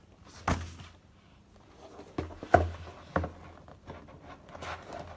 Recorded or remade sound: recorded